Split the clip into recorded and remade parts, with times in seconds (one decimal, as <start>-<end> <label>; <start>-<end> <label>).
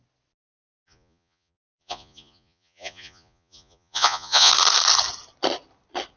0.0-0.8 recorded; 0.8-4.5 remade; 4.5-6.2 recorded